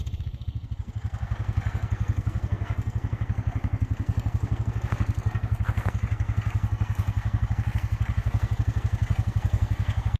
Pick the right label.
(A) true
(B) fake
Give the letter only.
B